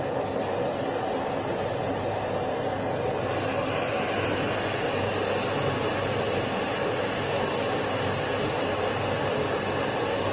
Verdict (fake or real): real